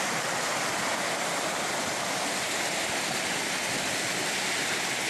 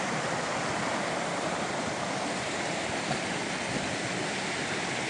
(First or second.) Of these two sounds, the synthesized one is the second